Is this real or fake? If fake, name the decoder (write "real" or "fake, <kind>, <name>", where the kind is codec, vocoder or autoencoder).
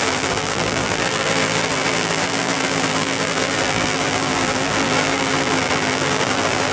fake, vocoder, BigVGAN v2